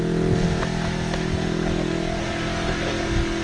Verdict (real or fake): real